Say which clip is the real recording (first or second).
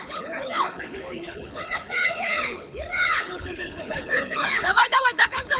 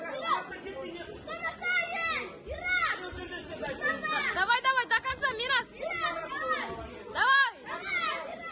second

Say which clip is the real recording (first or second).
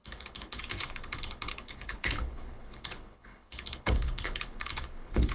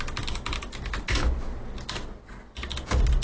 second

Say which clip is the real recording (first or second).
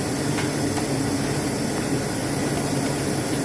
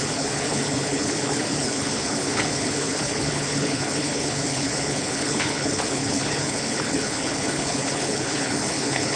first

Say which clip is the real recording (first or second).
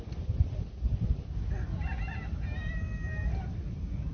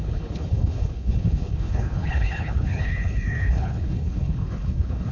first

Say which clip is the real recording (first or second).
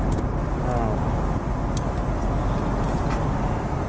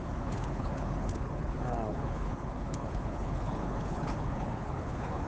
first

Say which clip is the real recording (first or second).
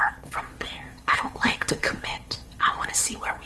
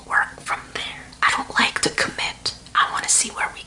second